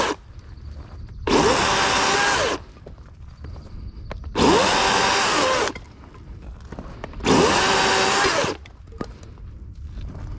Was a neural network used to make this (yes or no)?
no